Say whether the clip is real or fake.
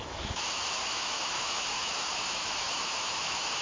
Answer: fake